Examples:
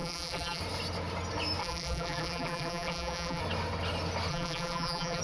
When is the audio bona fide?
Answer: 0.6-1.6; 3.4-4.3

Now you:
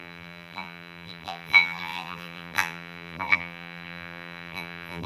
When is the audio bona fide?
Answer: none

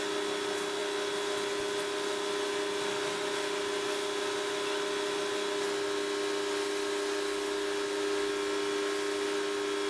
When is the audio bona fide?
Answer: 0.0-9.9

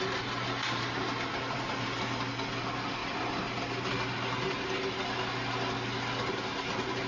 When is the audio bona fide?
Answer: 0.0-7.1

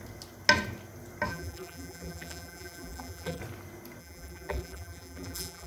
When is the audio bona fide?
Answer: 0.0-1.3; 3.4-4.0

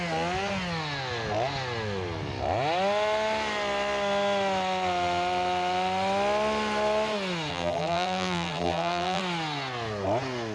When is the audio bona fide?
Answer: 0.0-7.5; 9.2-10.5

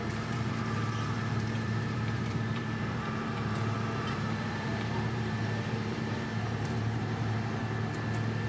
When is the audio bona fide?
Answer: 7.6-8.5

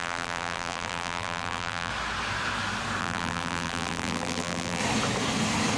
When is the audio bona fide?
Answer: 1.9-3.0; 4.8-5.8